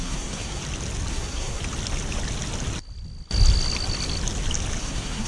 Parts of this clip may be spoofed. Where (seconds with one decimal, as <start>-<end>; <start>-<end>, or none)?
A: 0.0-0.6; 1.1-1.6; 4.8-5.3